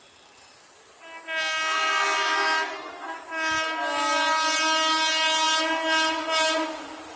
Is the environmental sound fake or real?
real